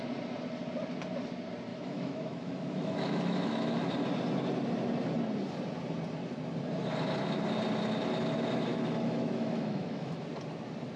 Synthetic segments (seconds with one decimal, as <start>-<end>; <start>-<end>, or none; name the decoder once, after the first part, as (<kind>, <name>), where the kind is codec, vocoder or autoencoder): 1.7-3.9 (autoencoder, DAC-VAE); 8.7-10.2